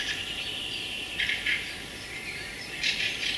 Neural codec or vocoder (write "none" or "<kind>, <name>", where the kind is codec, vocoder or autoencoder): vocoder, BigVGAN v2